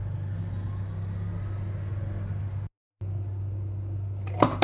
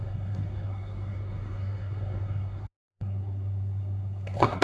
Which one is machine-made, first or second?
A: second